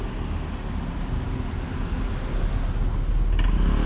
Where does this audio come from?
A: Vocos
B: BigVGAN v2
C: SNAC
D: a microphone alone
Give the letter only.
D